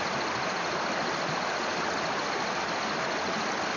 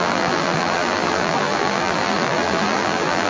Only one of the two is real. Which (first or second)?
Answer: first